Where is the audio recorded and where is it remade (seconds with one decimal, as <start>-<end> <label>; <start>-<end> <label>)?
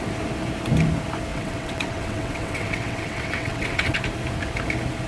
0.0-1.3 recorded; 1.3-4.0 remade; 4.0-5.1 recorded